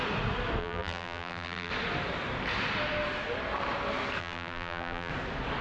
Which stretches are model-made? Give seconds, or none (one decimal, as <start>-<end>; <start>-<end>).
0.6-1.7; 4.2-5.1